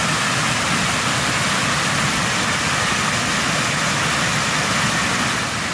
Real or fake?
real